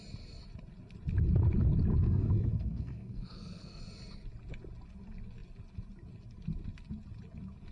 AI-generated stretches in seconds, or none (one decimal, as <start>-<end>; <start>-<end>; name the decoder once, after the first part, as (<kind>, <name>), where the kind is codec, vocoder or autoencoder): 1.9-3.8 (codec, SNAC)